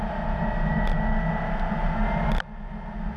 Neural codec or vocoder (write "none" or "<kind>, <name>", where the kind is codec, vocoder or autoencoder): none